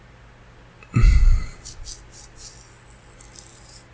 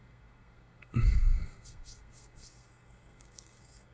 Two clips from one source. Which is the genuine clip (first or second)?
first